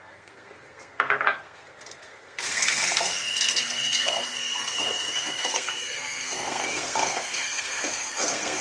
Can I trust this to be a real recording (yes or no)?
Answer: no